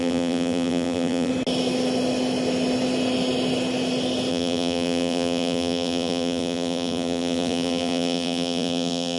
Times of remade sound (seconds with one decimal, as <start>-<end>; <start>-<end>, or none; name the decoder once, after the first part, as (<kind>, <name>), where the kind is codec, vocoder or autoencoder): 0.0-1.3 (vocoder, BigVGAN v2); 4.3-9.2